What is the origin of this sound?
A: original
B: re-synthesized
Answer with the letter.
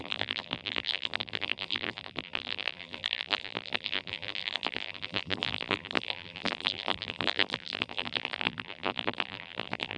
B